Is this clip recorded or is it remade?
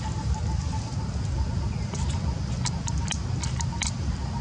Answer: recorded